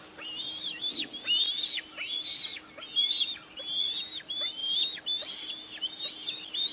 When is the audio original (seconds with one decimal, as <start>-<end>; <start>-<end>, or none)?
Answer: 0.0-6.7